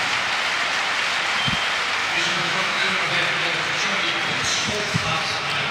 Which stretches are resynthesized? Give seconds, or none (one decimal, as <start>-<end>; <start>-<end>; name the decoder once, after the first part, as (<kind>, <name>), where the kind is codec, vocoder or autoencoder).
2.0-3.1 (autoencoder, DAC-VAE); 4.5-5.2